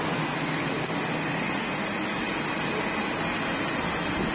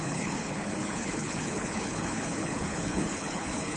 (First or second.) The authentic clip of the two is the first